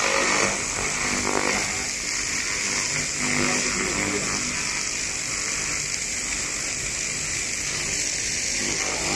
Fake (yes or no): no